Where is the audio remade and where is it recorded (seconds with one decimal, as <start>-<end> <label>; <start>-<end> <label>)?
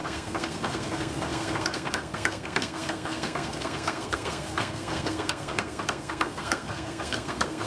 0.0-7.7 remade